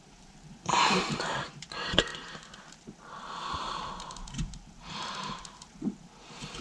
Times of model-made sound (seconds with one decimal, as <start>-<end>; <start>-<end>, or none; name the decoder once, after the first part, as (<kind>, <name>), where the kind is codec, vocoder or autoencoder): 0.0-6.6 (vocoder, BigVGAN v2)